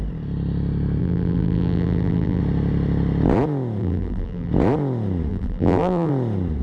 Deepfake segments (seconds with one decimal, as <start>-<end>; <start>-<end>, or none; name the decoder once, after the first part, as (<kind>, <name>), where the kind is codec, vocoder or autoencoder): 1.0-2.4 (vocoder, BigVGAN v2); 3.8-4.5; 5.3-6.1